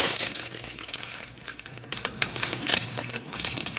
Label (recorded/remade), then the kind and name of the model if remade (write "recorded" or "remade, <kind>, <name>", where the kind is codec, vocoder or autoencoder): remade, codec, SNAC